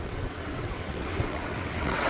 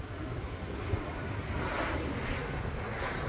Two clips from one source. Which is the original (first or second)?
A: second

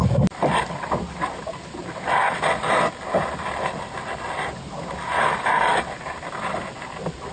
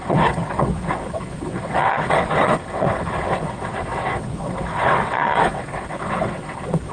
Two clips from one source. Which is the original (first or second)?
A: first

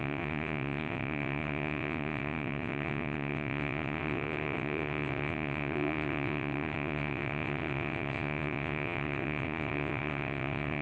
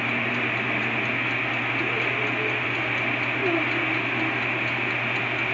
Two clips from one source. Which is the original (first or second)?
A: second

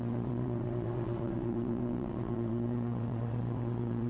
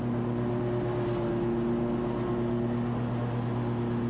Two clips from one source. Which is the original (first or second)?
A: second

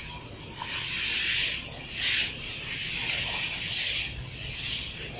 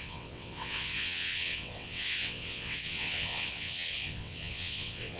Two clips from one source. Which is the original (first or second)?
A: first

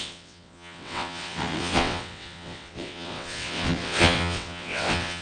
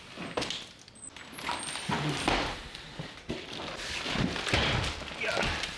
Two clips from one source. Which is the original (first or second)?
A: second